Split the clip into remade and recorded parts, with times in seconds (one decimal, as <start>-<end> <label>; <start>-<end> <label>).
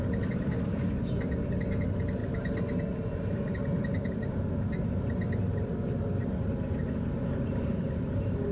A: 0.0-8.5 recorded